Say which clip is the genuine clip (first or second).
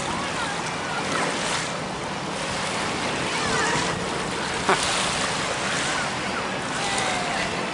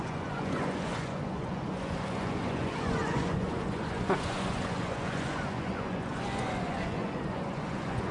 first